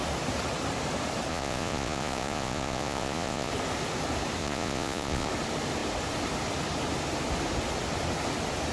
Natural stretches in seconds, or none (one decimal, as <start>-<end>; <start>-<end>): 0.0-1.3; 3.5-4.4; 5.3-8.7